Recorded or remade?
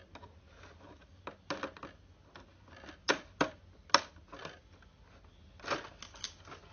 recorded